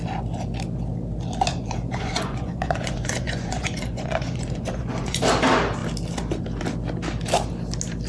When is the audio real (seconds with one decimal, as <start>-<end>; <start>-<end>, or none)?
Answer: 0.0-1.5; 5.2-8.1